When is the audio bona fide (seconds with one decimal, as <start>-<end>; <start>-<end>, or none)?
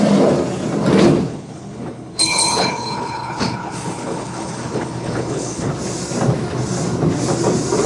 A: 0.0-1.3; 5.7-7.9